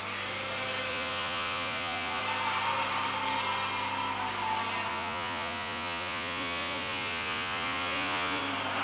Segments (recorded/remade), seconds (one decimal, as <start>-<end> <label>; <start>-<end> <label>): 0.0-0.9 recorded; 0.9-2.2 remade; 2.2-4.9 recorded; 4.9-8.4 remade; 8.4-8.8 recorded